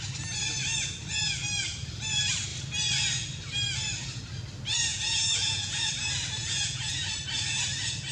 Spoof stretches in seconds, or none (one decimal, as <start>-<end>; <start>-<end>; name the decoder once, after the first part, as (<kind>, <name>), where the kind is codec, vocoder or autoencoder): 4.9-5.9 (vocoder, Vocos); 6.4-7.1